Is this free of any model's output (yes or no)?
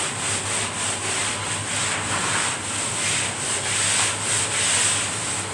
yes